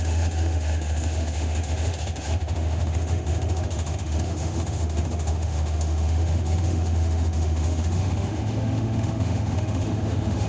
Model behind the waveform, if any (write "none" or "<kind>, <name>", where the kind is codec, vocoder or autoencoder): autoencoder, DAC-VAE